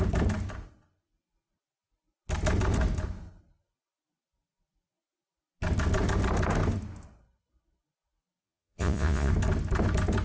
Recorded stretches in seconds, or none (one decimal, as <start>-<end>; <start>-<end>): 0.0-8.4; 9.3-10.2